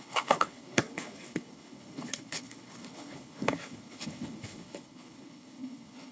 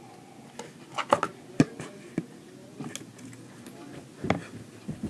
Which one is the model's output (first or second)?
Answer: first